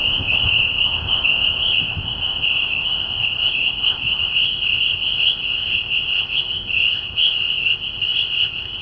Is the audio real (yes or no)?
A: no